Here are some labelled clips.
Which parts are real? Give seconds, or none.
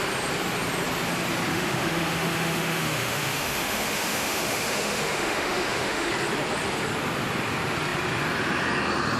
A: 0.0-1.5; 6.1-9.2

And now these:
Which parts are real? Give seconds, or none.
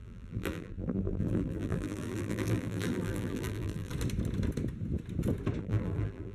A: 3.9-5.6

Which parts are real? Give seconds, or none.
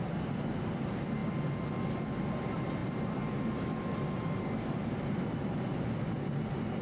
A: 0.0-6.8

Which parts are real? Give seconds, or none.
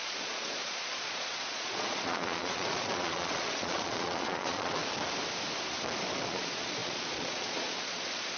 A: 4.8-6.3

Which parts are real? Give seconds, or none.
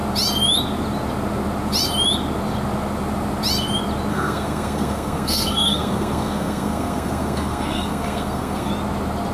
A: 0.0-4.1; 8.7-9.3